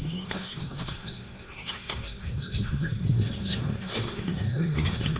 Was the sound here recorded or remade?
remade